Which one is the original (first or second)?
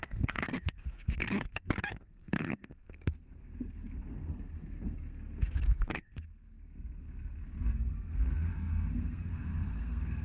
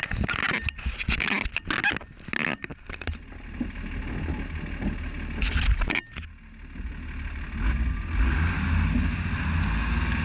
second